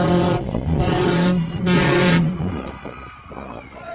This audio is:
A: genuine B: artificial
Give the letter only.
B